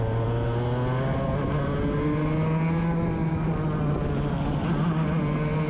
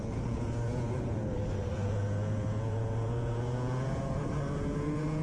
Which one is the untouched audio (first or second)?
first